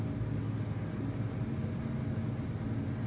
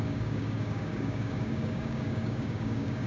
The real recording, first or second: first